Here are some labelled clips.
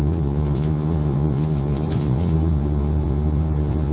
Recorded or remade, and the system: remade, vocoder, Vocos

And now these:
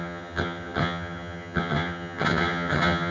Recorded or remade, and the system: remade, vocoder, HiFi-GAN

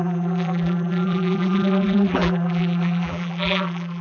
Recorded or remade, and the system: remade, vocoder, BigVGAN v2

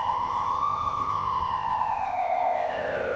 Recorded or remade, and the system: remade, codec, ZipCodec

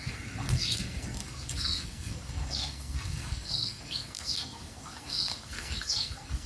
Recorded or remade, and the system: remade, codec, SNAC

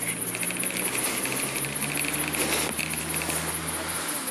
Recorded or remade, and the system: recorded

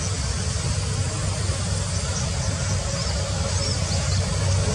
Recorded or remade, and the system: recorded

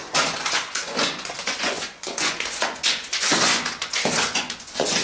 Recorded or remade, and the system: remade, vocoder, Vocos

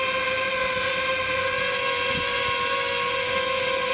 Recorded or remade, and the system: recorded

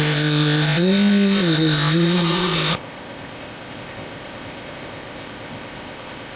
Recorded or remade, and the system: remade, codec, ZipCodec